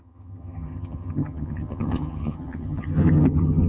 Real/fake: fake